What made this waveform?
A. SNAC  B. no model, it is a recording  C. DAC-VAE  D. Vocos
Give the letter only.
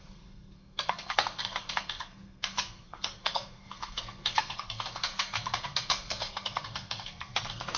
A